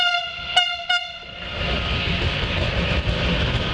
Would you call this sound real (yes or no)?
yes